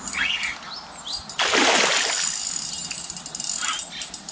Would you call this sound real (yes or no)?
yes